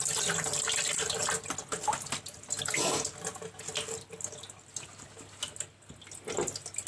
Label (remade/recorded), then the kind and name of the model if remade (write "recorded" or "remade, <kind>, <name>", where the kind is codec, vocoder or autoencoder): recorded